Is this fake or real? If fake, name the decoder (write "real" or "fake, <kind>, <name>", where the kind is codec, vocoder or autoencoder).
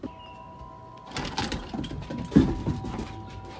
real